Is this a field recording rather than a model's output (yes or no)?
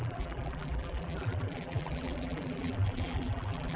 no